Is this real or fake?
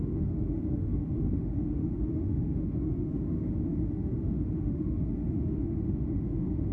fake